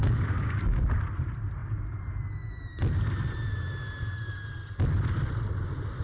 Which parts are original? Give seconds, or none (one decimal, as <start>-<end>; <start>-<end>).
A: 0.8-6.0